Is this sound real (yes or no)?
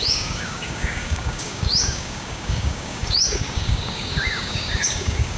no